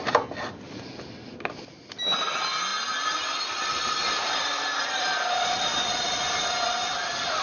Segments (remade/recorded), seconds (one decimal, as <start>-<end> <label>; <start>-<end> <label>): 0.0-2.7 recorded; 2.7-7.4 remade

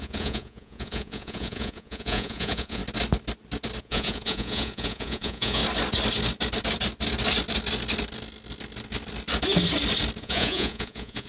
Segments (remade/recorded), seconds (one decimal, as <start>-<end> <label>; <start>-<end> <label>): 0.0-2.8 remade; 2.8-3.8 recorded; 3.8-5.6 remade; 5.6-10.2 recorded; 10.2-11.3 remade

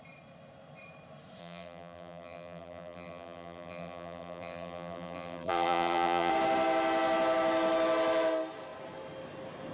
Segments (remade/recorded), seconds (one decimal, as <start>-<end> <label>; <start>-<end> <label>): 0.0-1.4 recorded; 1.4-6.3 remade; 6.3-9.7 recorded